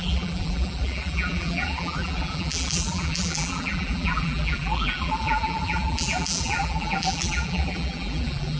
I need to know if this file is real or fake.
fake